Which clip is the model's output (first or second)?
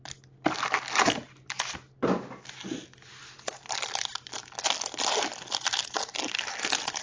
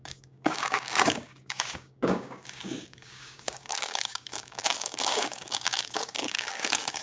second